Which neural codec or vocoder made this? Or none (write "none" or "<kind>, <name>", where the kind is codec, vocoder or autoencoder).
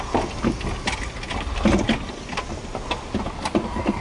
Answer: none